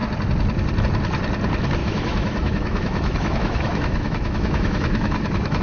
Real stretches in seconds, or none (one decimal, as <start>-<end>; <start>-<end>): 0.0-1.8